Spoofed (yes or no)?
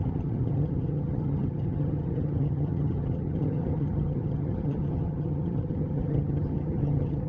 yes